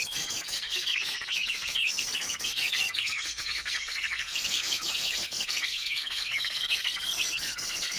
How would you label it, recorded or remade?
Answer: remade